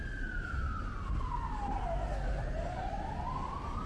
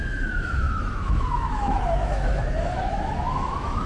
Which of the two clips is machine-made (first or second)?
second